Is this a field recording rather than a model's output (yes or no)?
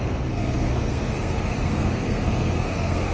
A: no